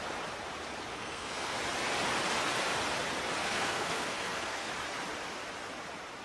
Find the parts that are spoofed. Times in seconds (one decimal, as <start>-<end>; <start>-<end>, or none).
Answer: 0.9-1.6; 3.4-4.7